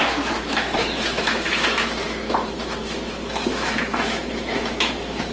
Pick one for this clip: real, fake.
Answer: fake